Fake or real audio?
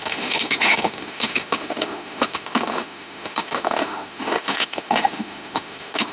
fake